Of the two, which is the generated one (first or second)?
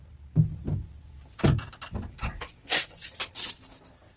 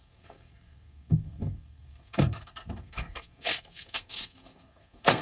second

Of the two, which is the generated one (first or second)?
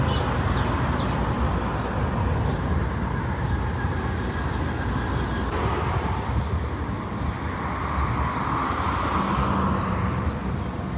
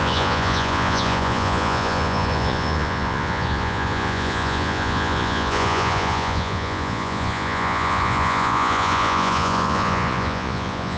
second